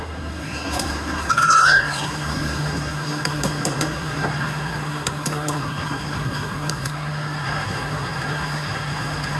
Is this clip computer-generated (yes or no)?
yes